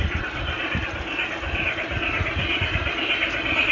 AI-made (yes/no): yes